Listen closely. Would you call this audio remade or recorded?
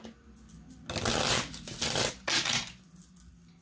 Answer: recorded